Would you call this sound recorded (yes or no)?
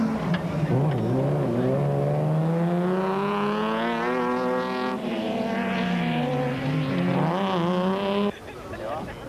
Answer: yes